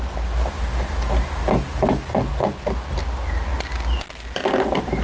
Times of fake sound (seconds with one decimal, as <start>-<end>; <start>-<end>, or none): none